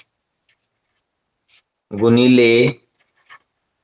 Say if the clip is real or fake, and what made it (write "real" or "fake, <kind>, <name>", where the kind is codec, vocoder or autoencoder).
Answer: real